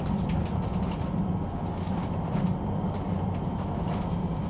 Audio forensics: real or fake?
real